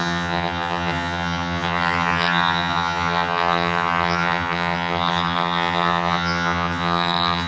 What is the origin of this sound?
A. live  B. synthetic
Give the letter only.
B